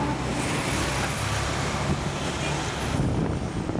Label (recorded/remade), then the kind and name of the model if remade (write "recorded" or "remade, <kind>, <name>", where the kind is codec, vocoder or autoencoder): recorded